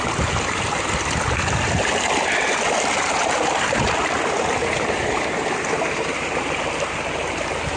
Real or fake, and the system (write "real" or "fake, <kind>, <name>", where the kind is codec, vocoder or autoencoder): real